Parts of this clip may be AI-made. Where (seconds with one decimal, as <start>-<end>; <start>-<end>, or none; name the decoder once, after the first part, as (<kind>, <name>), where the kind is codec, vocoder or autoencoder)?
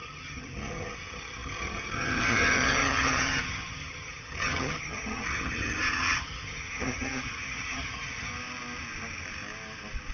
0.0-8.3 (vocoder, HiFi-GAN)